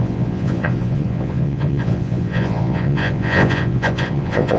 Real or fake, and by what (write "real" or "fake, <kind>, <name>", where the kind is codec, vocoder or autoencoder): fake, vocoder, Vocos